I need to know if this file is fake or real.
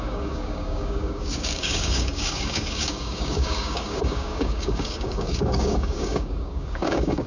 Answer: fake